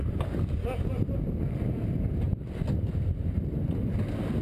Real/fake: real